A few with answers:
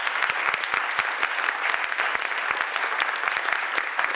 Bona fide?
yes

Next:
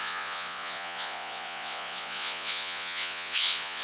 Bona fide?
no